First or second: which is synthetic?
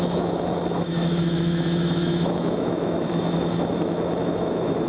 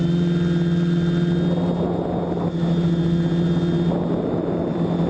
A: first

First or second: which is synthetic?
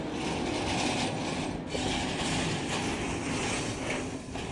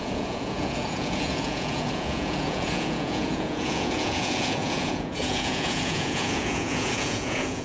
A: second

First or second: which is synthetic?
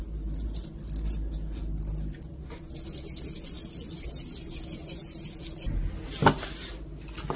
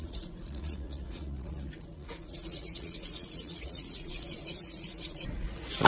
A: second